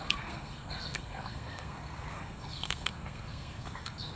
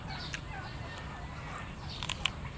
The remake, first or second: first